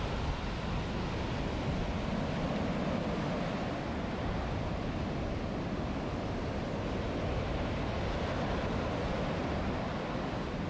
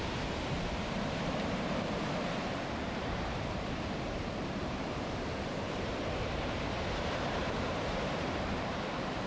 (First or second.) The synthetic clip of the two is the second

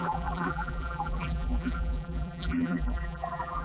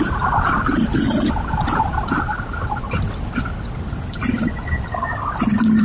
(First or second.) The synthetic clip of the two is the first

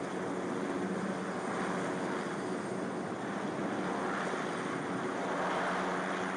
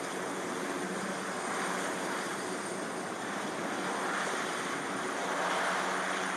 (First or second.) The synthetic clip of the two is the second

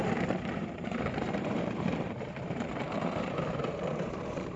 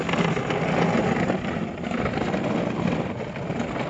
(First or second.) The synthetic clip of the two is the first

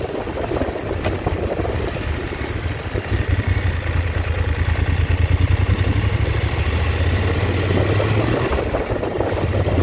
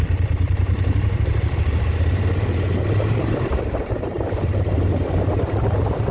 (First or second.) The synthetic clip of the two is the second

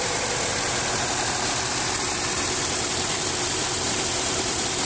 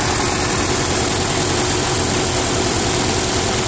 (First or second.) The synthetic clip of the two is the first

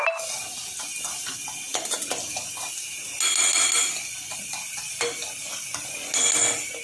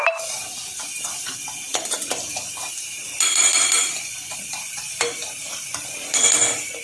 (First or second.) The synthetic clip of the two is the second